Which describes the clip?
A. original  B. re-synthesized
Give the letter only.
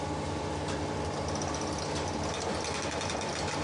A